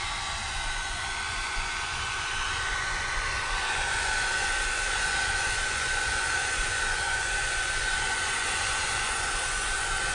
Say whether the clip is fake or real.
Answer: fake